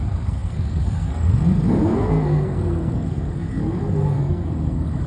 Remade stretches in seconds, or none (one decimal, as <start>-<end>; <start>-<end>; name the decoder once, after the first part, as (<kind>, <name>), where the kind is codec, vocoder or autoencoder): 0.0-5.1 (codec, SNAC)